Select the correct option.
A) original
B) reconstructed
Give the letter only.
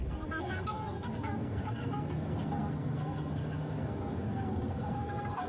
B